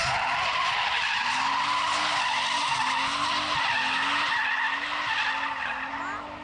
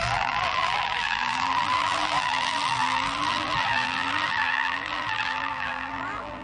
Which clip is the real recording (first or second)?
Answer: first